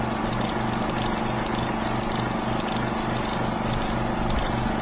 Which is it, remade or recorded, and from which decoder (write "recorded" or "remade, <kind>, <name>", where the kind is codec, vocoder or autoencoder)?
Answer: recorded